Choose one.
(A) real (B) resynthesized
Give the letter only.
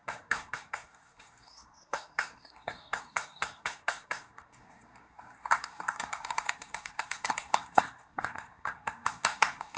B